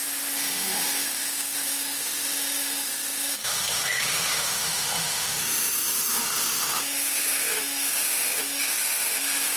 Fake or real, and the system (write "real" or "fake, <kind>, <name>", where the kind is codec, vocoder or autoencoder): fake, autoencoder, DAC-VAE